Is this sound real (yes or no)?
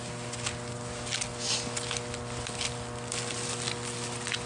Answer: yes